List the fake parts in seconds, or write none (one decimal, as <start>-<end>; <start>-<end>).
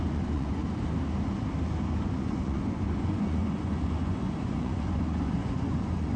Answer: 0.0-0.6; 2.0-6.2